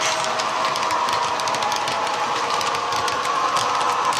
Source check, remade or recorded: recorded